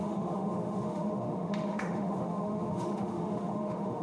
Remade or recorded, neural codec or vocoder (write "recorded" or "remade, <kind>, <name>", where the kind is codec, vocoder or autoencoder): remade, autoencoder, DAC-VAE